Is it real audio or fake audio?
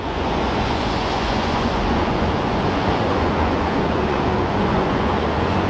fake